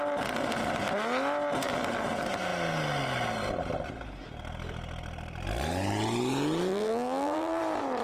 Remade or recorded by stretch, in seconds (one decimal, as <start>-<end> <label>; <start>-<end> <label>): 0.0-6.7 recorded; 6.7-7.6 remade; 7.6-8.0 recorded